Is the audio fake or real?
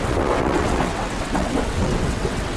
fake